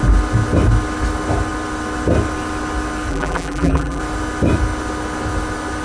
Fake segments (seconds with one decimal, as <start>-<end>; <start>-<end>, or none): 3.1-4.0